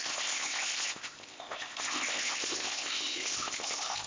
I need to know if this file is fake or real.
fake